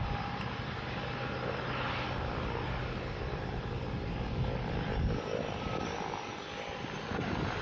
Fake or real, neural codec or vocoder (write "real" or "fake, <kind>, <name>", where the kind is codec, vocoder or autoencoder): real